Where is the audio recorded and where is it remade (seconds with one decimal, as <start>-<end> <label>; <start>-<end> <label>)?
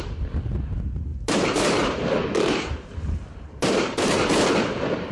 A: 0.0-1.1 recorded; 1.1-4.2 remade; 4.2-5.1 recorded